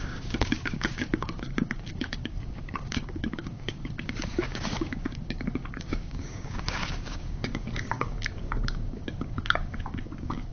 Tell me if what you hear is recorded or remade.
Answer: remade